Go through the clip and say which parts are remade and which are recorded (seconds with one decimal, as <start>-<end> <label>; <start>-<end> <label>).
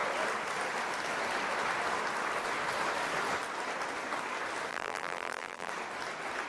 0.0-4.7 recorded; 4.7-5.7 remade; 5.7-6.5 recorded